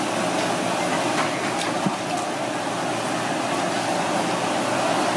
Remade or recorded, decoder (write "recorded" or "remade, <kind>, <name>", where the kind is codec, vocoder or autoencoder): recorded